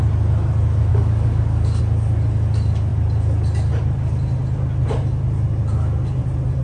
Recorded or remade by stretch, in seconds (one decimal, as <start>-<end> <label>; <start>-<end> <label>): 0.0-0.9 recorded; 0.9-1.8 remade; 1.8-6.6 recorded